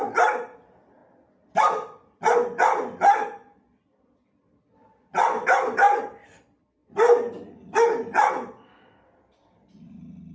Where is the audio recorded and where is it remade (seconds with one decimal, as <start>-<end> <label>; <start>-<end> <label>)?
0.0-10.3 recorded